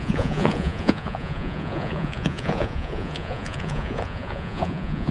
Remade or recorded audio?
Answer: remade